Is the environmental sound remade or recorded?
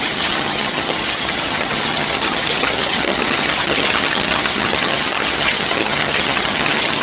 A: remade